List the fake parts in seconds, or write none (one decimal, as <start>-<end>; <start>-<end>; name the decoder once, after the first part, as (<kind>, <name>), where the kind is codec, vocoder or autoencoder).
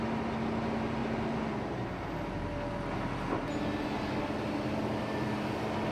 1.0-1.9 (vocoder, BigVGAN v2)